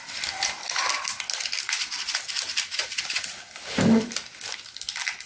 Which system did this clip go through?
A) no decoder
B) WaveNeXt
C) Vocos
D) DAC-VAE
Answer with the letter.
A